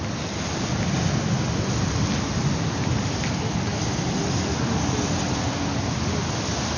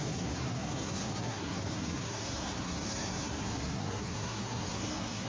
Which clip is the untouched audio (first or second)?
first